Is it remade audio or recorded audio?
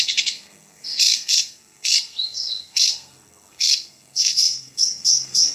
remade